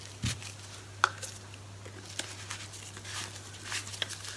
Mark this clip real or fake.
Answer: real